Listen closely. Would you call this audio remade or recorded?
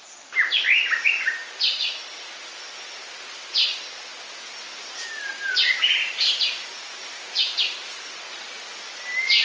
recorded